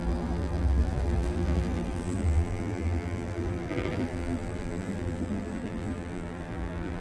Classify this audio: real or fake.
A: fake